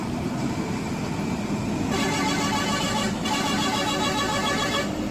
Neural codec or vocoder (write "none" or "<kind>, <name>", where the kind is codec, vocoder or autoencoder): none